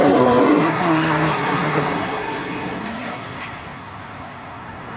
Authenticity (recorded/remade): remade